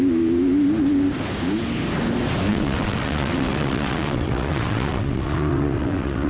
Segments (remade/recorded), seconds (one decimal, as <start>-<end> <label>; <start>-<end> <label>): 0.0-2.5 recorded; 2.5-6.3 remade